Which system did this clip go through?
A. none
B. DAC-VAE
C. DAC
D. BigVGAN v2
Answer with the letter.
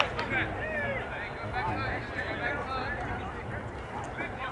A